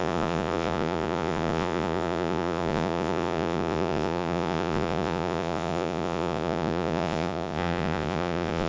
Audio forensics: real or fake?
fake